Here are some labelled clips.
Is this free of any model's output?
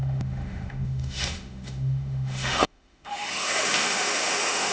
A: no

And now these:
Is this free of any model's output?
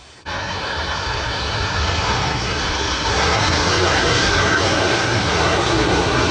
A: no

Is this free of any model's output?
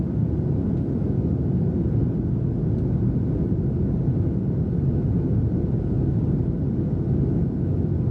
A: yes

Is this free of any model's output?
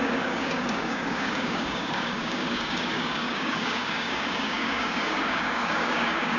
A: no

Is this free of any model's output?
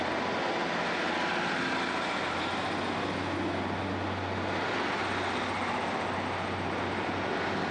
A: yes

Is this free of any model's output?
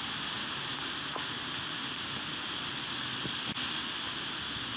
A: yes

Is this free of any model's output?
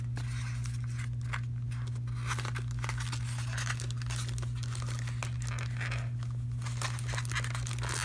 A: yes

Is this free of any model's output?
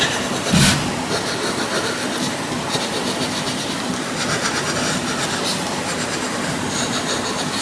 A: yes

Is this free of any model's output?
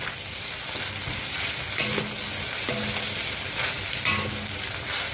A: yes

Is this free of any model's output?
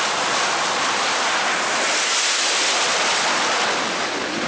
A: no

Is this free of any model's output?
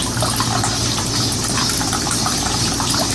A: yes